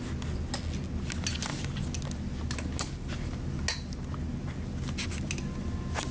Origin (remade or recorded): recorded